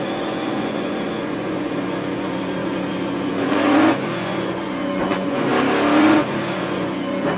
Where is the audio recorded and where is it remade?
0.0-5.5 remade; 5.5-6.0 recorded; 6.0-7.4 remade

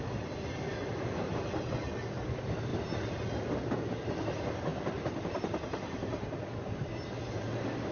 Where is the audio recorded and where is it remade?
0.0-7.9 recorded

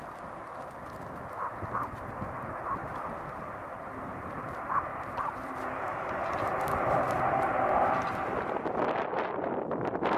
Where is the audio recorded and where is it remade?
0.0-4.9 recorded; 4.9-8.3 remade; 8.3-10.2 recorded